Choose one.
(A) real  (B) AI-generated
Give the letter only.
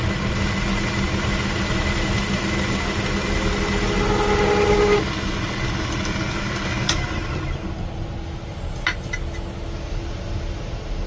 A